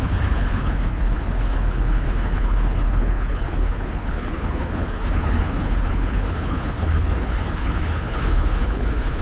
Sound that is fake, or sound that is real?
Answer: fake